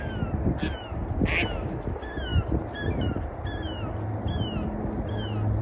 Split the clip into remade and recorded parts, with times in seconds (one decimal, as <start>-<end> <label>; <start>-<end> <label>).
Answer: 0.0-5.6 recorded